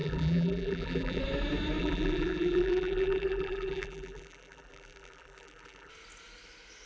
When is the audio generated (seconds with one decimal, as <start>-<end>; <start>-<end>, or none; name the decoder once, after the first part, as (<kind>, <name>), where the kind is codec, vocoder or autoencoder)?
0.0-1.2 (vocoder, BigVGAN v2); 1.8-5.9